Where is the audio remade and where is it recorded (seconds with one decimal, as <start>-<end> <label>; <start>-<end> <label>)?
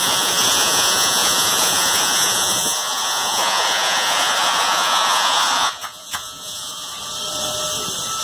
0.0-6.9 remade; 6.9-8.2 recorded